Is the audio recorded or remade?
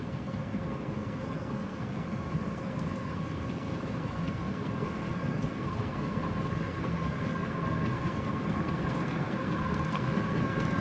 remade